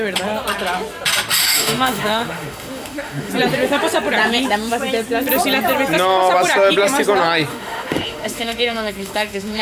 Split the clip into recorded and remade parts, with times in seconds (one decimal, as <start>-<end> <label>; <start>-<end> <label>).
0.0-1.4 recorded; 1.4-3.3 remade; 3.3-7.5 recorded; 7.5-9.6 remade